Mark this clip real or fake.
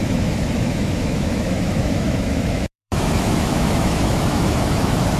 fake